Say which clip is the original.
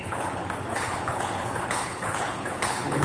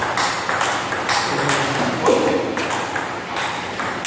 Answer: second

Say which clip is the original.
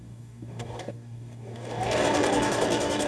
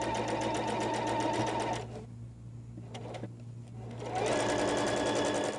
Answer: second